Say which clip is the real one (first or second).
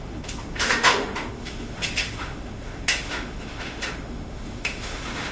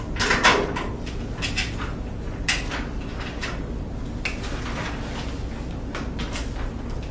second